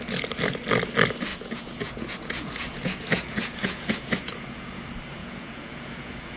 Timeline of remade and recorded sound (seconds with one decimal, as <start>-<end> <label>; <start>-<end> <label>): 0.0-1.3 recorded; 1.3-4.8 remade; 4.8-5.2 recorded; 5.2-6.4 remade